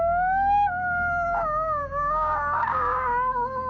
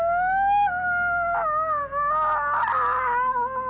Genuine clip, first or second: second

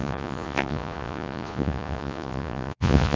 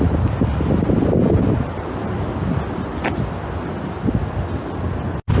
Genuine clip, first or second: second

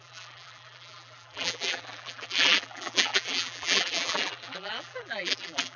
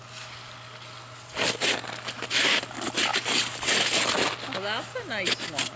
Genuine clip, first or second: second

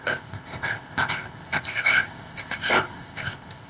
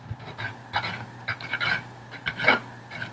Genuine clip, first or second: second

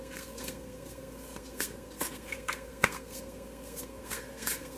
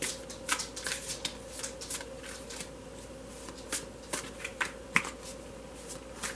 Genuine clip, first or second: second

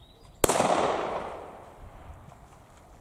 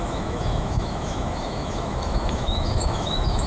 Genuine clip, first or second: first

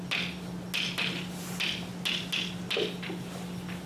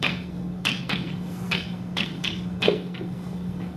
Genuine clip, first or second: first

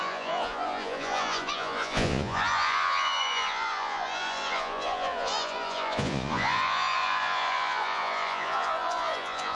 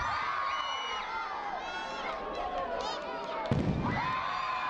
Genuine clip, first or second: second